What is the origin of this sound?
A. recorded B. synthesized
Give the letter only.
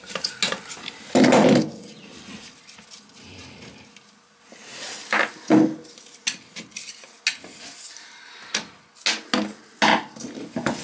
A